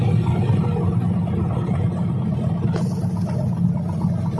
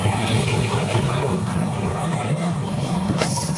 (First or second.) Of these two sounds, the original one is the first